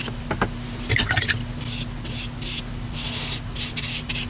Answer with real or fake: real